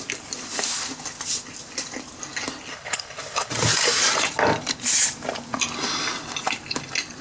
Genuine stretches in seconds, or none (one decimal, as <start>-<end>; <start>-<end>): 0.0-2.7; 3.5-7.2